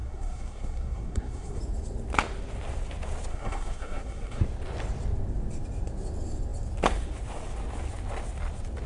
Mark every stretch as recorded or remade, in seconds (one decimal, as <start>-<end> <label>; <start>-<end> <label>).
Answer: 0.0-1.6 remade; 1.6-3.3 recorded; 3.3-4.4 remade; 4.4-8.9 recorded